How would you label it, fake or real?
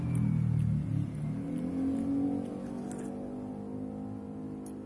real